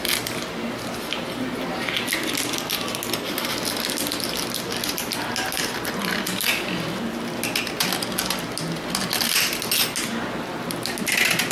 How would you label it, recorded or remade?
recorded